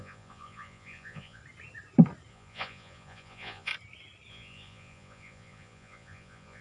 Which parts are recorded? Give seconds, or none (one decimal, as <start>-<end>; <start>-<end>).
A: 1.4-2.3; 3.7-4.3